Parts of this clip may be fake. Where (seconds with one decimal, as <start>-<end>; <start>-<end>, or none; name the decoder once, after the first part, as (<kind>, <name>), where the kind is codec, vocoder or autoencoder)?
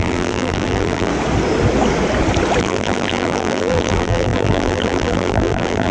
0.0-1.1 (vocoder, BigVGAN v2); 2.6-5.9